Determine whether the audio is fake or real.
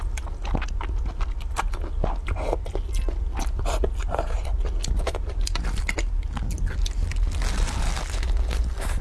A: real